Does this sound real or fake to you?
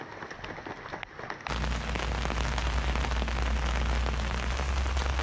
real